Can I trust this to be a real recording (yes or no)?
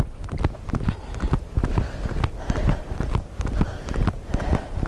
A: yes